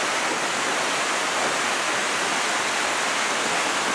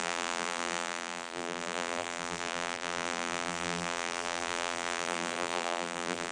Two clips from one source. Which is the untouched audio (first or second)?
first